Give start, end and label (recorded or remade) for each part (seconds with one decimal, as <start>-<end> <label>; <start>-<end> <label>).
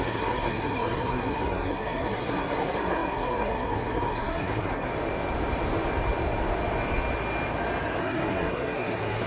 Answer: 0.0-4.9 remade; 4.9-8.0 recorded; 8.0-9.3 remade